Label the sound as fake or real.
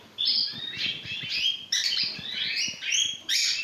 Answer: fake